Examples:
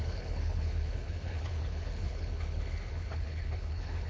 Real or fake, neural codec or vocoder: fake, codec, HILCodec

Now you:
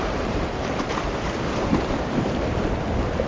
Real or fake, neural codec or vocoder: fake, vocoder, BigVGAN v2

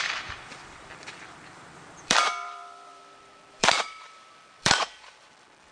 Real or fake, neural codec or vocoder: fake, vocoder, BigVGAN v2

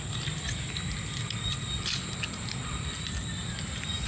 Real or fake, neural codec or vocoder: real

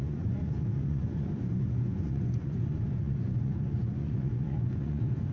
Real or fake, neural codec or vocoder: fake, vocoder, Vocos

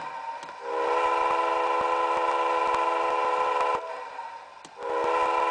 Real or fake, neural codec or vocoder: real